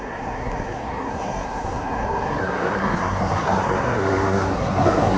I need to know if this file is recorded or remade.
remade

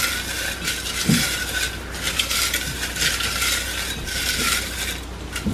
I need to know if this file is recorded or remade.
recorded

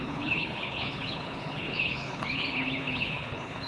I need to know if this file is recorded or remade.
remade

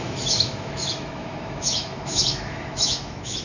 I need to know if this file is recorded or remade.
remade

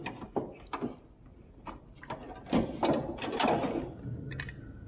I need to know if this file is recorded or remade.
recorded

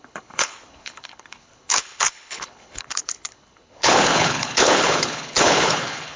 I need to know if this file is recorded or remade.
remade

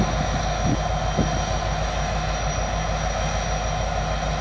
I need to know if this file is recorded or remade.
recorded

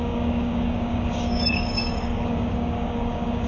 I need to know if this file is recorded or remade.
remade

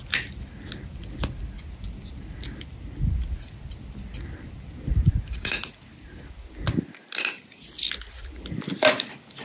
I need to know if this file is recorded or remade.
recorded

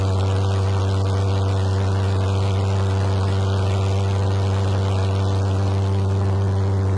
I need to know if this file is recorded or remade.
recorded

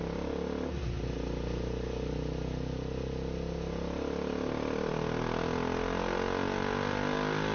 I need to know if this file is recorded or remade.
recorded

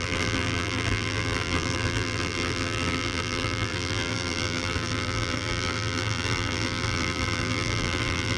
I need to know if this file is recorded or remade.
remade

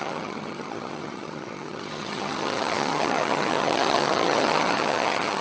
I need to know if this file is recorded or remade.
remade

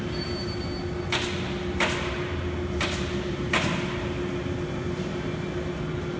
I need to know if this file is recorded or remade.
recorded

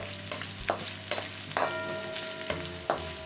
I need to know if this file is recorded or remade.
recorded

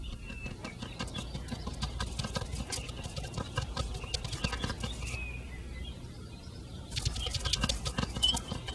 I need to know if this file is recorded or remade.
recorded